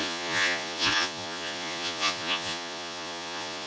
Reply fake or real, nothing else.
fake